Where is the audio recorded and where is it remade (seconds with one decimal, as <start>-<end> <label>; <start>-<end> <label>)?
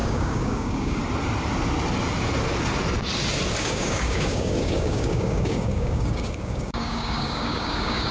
0.0-1.0 remade; 1.0-3.6 recorded; 3.6-8.1 remade